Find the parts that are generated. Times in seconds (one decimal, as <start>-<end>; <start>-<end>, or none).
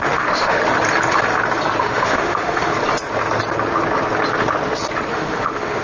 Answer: 0.0-0.6; 1.8-2.7; 5.1-5.8